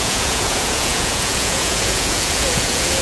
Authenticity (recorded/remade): remade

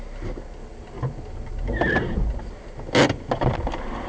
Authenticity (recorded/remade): recorded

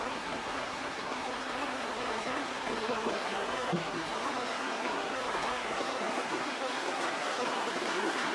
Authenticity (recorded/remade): remade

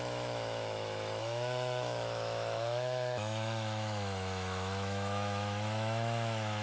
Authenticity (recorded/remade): remade